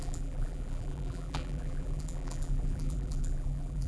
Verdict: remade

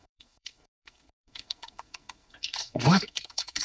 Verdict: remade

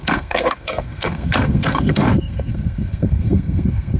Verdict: remade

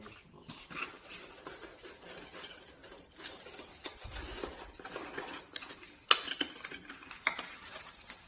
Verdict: recorded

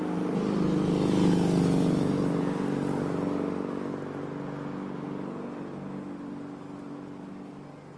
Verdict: recorded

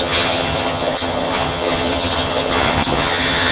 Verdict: remade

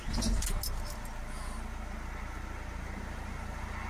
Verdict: recorded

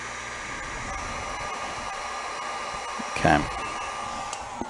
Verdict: recorded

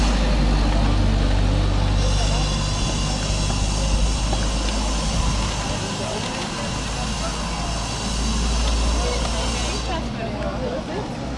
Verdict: recorded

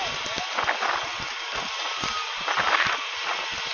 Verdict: recorded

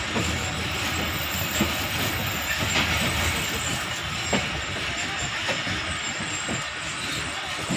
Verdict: recorded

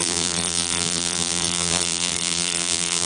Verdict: remade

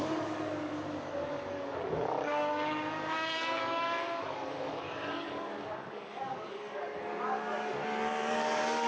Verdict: remade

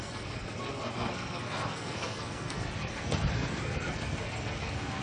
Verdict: remade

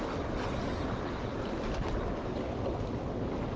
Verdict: recorded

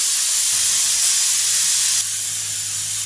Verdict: recorded